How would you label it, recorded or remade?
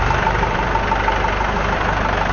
recorded